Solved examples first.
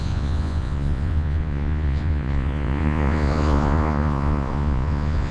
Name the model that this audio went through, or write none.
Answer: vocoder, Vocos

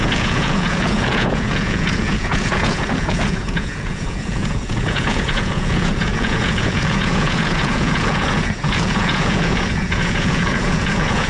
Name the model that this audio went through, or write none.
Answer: vocoder, Vocos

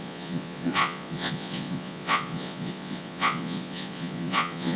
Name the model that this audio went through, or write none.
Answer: vocoder, Vocos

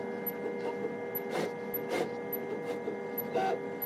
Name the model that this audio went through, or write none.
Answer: none